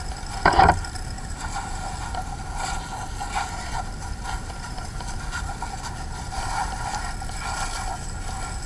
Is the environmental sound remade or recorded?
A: recorded